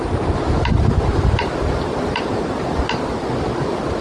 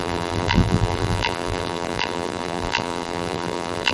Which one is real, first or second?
first